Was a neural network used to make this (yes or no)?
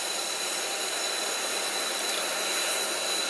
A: no